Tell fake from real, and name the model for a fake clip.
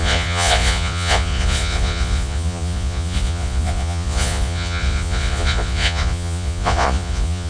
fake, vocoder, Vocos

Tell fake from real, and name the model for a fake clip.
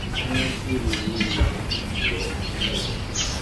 real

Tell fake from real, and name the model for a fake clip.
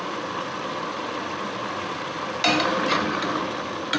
real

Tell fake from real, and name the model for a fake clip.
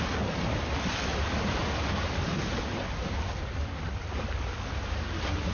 real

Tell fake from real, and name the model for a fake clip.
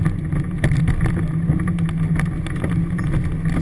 real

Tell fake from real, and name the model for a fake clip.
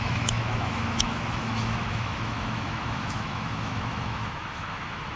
fake, autoencoder, DAC-VAE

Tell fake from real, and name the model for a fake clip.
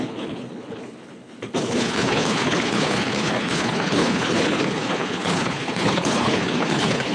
fake, codec, HILCodec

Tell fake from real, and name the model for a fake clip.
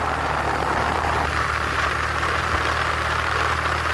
real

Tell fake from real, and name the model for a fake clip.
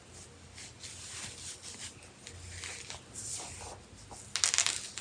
real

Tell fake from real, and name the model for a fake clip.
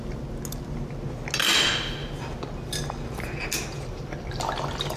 real